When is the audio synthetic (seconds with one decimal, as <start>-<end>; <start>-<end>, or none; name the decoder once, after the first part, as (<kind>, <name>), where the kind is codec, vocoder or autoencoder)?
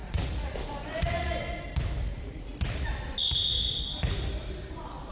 0.0-1.3 (vocoder, Vocos); 2.1-2.9